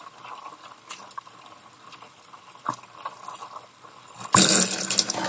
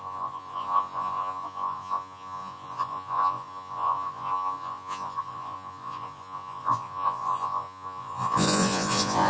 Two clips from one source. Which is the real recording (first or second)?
first